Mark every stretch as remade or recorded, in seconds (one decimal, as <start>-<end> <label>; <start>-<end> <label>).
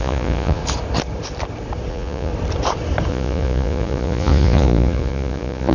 0.0-0.6 remade; 0.6-1.9 recorded; 1.9-2.3 remade; 2.3-3.1 recorded; 3.1-5.7 remade